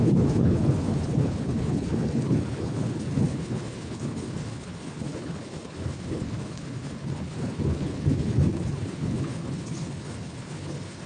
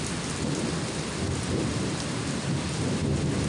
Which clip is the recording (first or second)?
second